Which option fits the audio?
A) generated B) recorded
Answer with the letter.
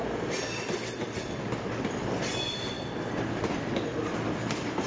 B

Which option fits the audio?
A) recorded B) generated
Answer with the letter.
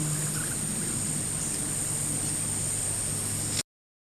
A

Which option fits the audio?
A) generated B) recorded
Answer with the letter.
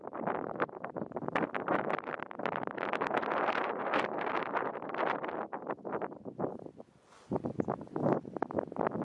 B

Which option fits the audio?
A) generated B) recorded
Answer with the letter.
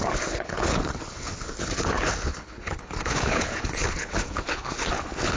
A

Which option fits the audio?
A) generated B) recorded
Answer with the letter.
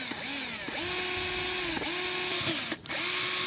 B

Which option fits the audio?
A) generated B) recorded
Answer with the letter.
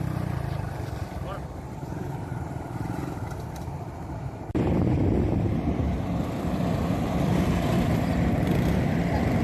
A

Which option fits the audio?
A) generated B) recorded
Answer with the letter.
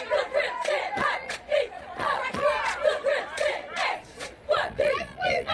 A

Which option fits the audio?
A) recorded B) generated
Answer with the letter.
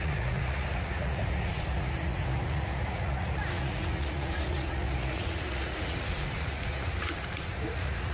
B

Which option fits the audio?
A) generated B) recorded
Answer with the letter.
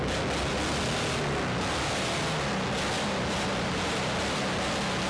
B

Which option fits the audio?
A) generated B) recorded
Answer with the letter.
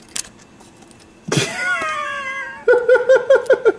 B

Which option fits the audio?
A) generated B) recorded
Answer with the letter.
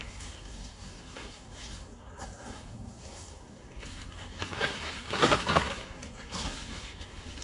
A